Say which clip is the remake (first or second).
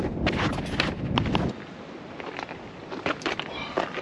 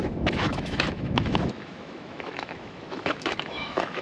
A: second